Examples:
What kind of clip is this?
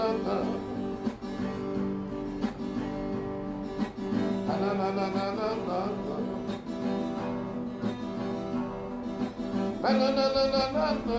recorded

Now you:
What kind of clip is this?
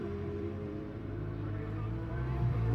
remade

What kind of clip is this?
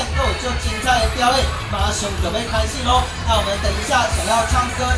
remade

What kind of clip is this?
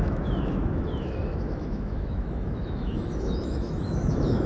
remade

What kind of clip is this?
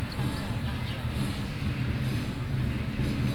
recorded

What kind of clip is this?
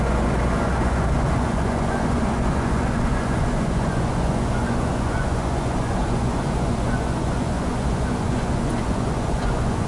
remade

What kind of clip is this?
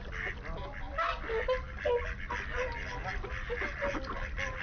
recorded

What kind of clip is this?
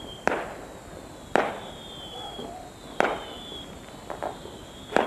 recorded